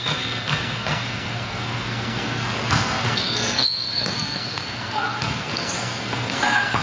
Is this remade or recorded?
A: remade